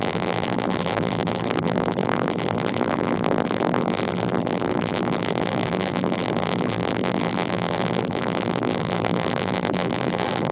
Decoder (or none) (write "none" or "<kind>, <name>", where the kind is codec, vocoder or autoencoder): vocoder, BigVGAN v2